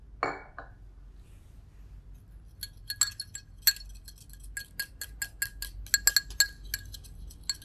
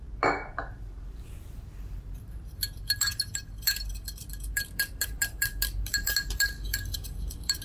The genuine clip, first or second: first